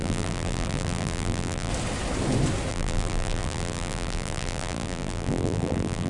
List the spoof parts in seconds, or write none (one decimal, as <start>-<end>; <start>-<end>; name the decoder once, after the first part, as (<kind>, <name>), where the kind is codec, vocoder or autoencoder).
0.0-1.7 (vocoder, BigVGAN v2); 2.7-6.1